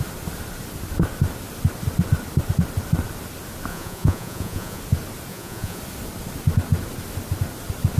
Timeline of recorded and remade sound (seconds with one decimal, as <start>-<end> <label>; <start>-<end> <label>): 0.0-3.7 recorded; 3.7-4.8 remade; 4.8-5.3 recorded; 5.3-5.8 remade; 5.8-8.0 recorded